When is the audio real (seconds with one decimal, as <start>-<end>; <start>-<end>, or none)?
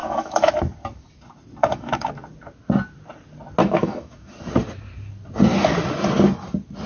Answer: 0.5-1.6; 2.1-3.6; 4.3-6.9